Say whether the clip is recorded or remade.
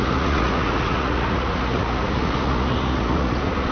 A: remade